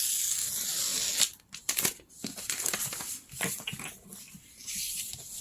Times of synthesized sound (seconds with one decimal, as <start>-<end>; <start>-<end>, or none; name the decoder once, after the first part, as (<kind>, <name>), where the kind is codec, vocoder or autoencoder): none